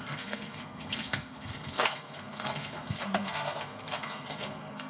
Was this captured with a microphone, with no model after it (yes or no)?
no